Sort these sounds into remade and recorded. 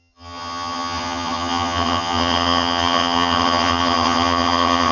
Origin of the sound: remade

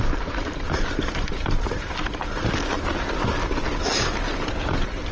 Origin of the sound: recorded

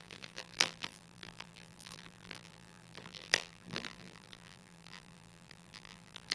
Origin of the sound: remade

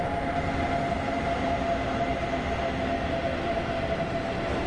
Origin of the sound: recorded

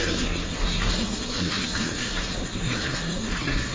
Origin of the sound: remade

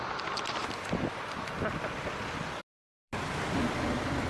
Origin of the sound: remade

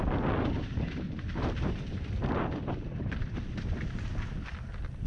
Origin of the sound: recorded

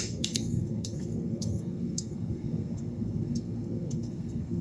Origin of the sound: remade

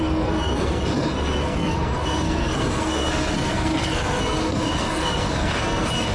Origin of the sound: remade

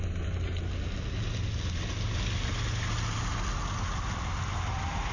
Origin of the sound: recorded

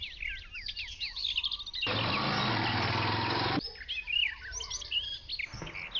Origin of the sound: recorded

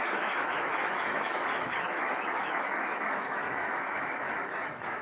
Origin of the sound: remade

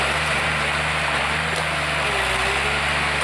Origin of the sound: recorded